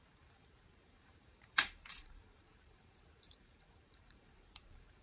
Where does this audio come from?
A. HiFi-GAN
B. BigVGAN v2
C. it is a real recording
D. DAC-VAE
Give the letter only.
B